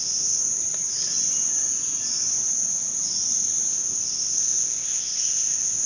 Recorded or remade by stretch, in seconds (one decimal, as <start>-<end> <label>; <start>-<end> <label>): 0.0-0.4 remade; 0.4-3.7 recorded; 3.7-5.9 remade